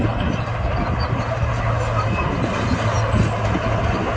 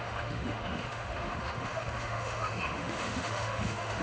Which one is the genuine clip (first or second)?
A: first